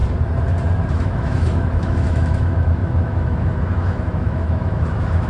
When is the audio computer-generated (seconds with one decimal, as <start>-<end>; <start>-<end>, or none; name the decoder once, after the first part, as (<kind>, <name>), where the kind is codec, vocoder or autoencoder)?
0.9-5.3 (autoencoder, DAC-VAE)